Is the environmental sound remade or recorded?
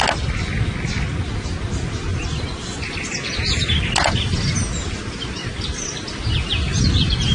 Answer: recorded